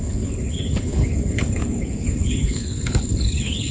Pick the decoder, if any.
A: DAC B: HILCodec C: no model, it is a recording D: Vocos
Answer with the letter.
B